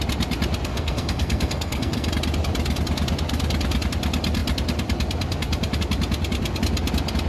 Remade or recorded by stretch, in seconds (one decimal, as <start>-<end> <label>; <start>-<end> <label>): 0.0-0.7 recorded; 0.7-2.1 remade; 2.1-7.3 recorded